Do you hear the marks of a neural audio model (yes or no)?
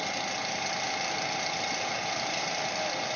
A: no